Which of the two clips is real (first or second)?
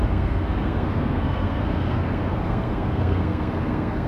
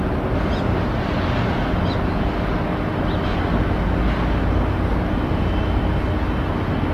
second